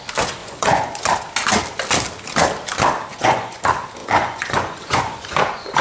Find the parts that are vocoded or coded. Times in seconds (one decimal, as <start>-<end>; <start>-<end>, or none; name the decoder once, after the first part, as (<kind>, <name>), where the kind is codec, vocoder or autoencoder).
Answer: 0.4-1.0 (vocoder, Vocos); 3.1-3.6; 4.0-5.8